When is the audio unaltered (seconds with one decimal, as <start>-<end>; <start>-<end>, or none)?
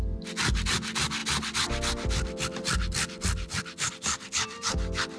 0.0-5.2